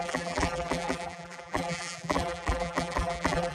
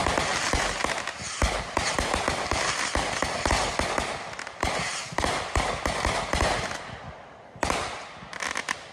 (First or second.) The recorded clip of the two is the second